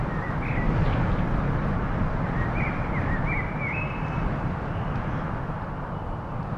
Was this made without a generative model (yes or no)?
yes